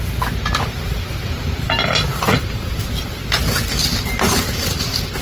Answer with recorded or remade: recorded